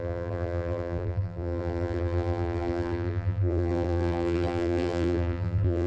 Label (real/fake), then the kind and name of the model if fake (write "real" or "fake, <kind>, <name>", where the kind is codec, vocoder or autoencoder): fake, vocoder, BigVGAN v2